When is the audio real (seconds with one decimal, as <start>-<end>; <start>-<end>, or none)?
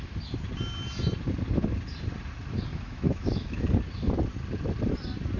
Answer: 0.0-2.7; 3.6-5.4